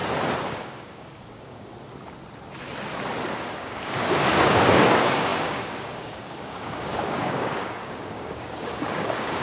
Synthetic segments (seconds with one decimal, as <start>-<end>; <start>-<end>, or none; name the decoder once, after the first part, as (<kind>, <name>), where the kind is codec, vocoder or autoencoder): 0.5-1.7 (codec, DAC); 3.3-9.4